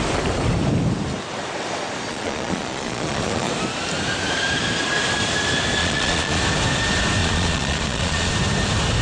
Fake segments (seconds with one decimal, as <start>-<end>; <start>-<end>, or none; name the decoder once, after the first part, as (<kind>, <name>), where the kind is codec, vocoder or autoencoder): 2.1-3.5 (vocoder, Vocos); 5.8-6.4; 7.2-8.3